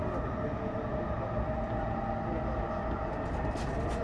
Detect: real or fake real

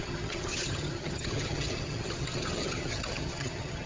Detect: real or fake fake